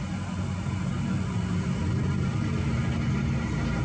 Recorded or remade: recorded